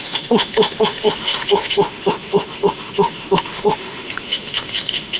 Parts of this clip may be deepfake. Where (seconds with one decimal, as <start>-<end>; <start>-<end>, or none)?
0.0-5.2